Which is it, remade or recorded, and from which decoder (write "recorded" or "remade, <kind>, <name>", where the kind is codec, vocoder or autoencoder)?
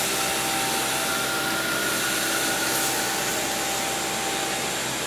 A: recorded